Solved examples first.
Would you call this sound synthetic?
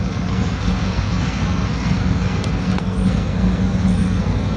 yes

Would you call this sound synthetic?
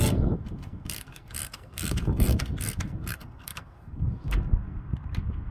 yes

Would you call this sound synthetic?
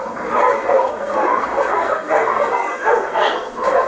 yes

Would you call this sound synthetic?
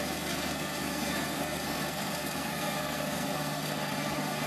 yes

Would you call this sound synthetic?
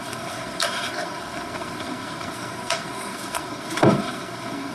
yes